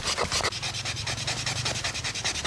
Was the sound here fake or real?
real